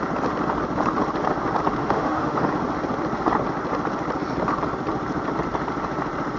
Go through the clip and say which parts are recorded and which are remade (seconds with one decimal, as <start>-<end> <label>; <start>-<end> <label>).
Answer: 0.0-1.8 recorded; 1.8-2.5 remade; 2.5-6.4 recorded